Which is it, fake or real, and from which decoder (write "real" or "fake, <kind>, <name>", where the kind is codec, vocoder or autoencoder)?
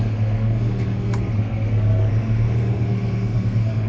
fake, codec, SNAC